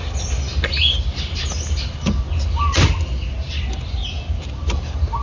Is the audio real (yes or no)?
yes